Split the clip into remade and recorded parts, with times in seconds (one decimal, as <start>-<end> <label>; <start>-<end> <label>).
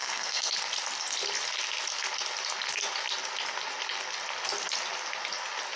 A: 0.0-0.5 remade; 0.5-5.8 recorded